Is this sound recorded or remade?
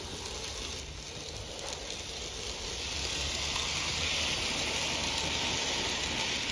recorded